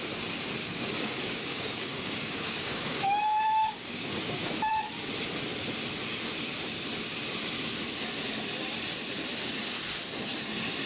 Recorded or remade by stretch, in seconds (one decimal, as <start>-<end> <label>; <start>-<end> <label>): 0.0-0.6 recorded; 0.6-4.2 remade; 4.2-10.9 recorded